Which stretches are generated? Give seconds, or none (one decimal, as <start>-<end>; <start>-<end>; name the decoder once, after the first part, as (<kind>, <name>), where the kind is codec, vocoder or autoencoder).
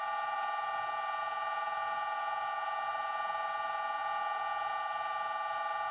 none